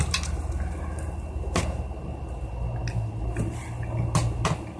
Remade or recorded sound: recorded